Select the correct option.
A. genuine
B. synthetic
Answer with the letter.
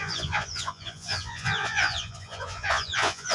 B